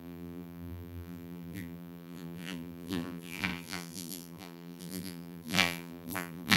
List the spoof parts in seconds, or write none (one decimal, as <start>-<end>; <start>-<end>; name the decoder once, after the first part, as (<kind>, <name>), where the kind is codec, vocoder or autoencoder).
0.0-6.6 (vocoder, BigVGAN v2)